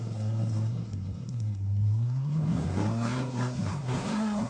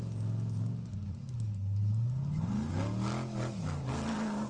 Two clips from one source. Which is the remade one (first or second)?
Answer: first